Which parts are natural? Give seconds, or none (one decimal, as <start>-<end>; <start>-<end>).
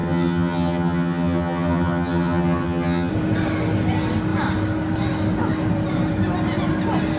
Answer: 3.1-7.2